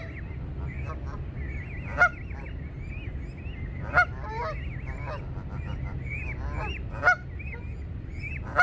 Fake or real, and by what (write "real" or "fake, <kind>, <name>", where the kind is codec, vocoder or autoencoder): real